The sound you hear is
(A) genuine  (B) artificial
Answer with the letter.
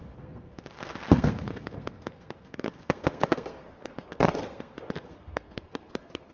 B